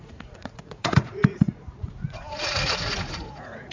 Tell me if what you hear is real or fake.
fake